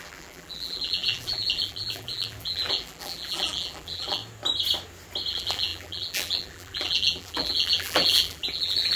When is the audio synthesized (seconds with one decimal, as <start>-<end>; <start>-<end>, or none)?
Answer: 0.0-4.2; 5.3-9.0